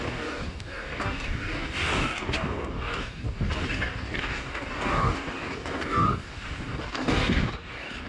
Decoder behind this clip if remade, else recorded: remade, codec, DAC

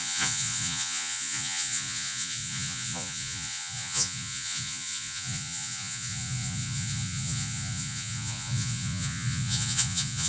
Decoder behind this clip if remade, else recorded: remade, vocoder, Vocos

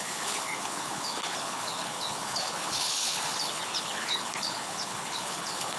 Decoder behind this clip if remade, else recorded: remade, codec, HILCodec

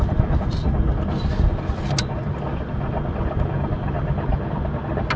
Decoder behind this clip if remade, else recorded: recorded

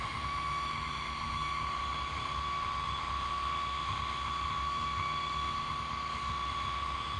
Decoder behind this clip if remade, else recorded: remade, autoencoder, DAC-VAE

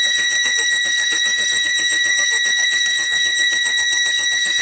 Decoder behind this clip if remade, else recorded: remade, codec, SNAC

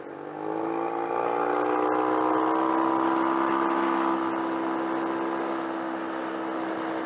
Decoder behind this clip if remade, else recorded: recorded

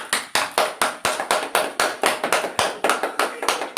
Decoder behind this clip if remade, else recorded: recorded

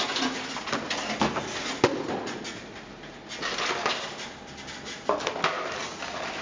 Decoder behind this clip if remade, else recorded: recorded